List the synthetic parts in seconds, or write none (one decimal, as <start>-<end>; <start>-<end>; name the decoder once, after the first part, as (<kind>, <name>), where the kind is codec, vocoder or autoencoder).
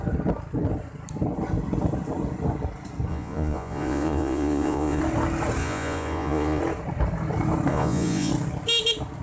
3.1-5.0 (vocoder, Vocos); 5.6-6.6; 7.7-8.3